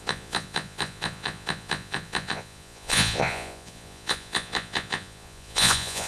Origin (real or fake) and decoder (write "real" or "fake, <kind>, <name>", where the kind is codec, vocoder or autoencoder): fake, vocoder, Vocos